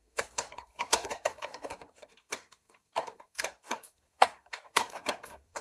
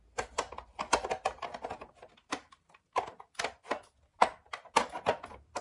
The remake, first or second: first